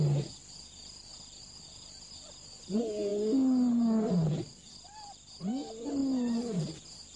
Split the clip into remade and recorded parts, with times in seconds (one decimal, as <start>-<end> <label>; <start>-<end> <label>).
0.0-7.2 recorded